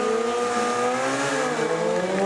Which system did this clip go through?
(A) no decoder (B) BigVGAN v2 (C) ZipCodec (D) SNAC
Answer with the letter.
A